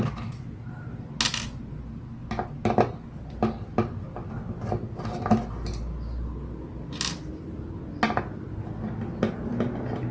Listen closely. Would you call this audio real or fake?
real